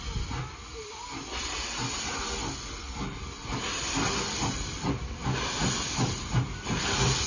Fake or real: real